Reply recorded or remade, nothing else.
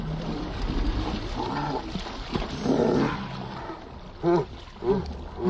recorded